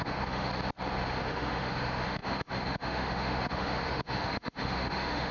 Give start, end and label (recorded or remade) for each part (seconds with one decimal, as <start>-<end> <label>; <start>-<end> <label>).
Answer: 0.0-0.5 remade; 0.5-1.2 recorded; 1.2-5.3 remade